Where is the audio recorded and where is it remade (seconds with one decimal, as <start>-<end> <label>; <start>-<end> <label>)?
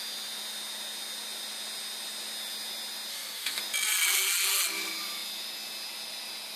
0.0-3.1 recorded; 3.1-3.6 remade; 3.6-6.6 recorded